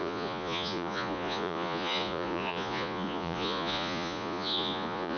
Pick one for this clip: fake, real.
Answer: fake